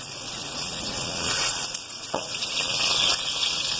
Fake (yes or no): yes